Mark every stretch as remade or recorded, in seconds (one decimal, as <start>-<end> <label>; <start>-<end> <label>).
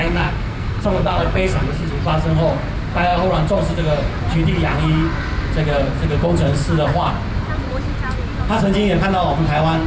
0.0-1.9 remade; 1.9-9.9 recorded